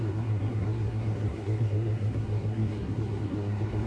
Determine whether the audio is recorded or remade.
remade